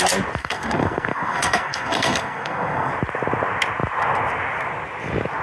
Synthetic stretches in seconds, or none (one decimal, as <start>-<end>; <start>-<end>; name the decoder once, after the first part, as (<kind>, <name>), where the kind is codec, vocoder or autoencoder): 0.4-2.9 (codec, SNAC)